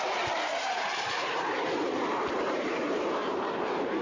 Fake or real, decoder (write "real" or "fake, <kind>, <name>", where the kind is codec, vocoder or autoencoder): fake, vocoder, BigVGAN v2